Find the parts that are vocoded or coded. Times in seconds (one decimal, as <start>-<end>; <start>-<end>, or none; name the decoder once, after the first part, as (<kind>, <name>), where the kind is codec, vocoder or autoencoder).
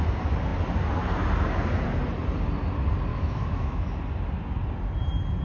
3.1-4.0 (autoencoder, DAC-VAE)